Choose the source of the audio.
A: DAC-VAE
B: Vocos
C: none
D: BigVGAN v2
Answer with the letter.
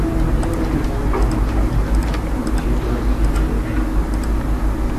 C